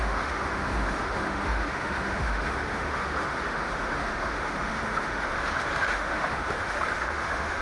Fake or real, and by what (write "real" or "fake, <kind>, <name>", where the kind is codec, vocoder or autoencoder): fake, autoencoder, DAC-VAE